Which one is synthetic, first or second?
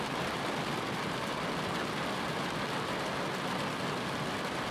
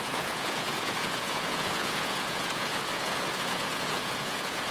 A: second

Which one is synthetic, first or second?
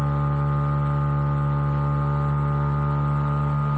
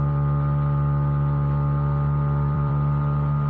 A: second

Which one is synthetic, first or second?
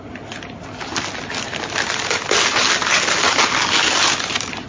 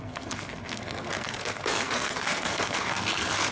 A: second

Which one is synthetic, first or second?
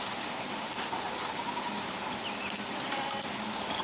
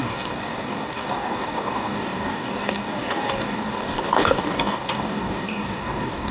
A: second